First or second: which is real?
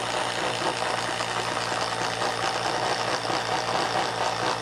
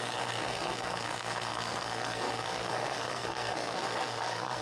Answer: first